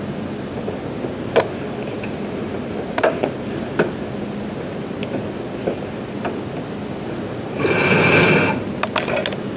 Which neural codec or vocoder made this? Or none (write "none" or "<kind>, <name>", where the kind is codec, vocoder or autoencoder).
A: none